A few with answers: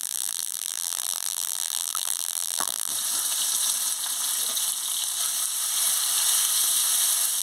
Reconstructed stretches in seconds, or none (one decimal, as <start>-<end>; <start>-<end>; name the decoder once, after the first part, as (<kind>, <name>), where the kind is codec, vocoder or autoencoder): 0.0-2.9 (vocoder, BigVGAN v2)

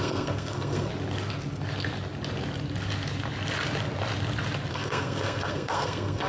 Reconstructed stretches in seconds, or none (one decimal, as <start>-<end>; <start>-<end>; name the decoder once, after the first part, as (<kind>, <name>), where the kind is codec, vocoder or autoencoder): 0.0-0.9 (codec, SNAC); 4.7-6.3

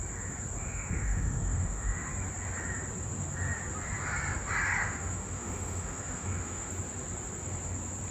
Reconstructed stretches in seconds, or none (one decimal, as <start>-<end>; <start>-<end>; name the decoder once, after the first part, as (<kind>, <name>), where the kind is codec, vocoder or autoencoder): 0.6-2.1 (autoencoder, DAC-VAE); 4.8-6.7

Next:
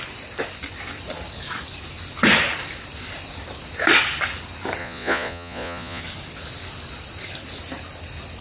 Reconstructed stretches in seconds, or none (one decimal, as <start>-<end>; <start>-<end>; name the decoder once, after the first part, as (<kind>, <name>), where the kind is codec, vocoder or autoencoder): 4.8-6.0 (vocoder, Vocos)